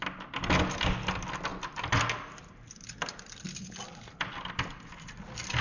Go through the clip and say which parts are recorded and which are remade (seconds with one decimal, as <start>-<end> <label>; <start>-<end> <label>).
0.0-5.6 recorded